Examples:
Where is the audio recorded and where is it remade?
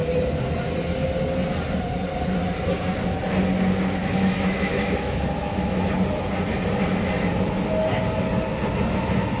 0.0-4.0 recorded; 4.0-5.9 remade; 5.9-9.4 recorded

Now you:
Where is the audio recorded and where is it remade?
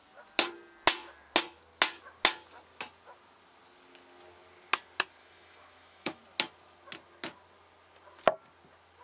0.0-5.2 recorded; 5.2-6.2 remade; 6.2-9.0 recorded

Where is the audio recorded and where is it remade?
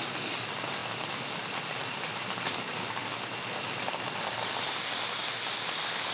0.0-6.1 recorded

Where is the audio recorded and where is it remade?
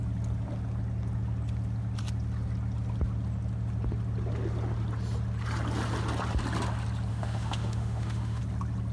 0.0-7.1 recorded; 7.1-8.4 remade; 8.4-8.9 recorded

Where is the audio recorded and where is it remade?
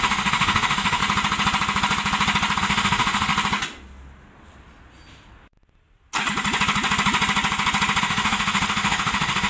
0.0-1.0 remade; 1.0-2.6 recorded; 2.6-3.3 remade; 3.3-8.0 recorded; 8.0-9.5 remade